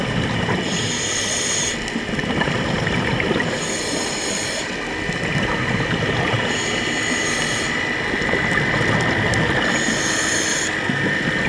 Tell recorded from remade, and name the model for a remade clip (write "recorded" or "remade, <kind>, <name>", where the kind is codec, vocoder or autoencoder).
recorded